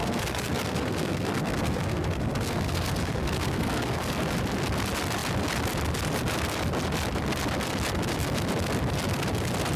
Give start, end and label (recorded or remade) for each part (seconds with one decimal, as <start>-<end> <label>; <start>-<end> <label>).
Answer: 0.0-4.1 remade; 4.1-9.8 recorded

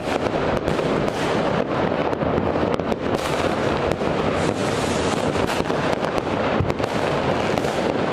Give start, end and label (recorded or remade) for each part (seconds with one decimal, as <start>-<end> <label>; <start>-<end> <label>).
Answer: 0.0-8.1 recorded

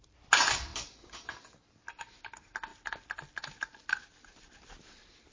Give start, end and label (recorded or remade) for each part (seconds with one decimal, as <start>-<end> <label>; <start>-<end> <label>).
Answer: 0.0-5.3 recorded